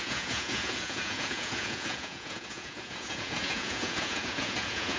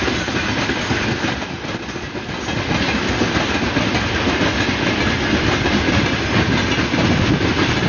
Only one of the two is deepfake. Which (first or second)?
first